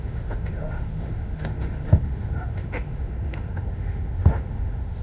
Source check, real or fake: fake